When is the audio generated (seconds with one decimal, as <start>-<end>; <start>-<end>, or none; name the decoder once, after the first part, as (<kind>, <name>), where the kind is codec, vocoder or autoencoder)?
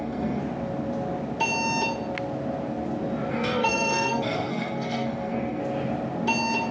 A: 0.0-0.4 (codec, SNAC); 3.3-5.6